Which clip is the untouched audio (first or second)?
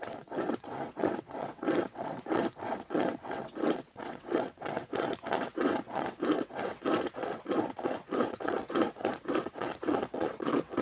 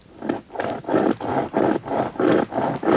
second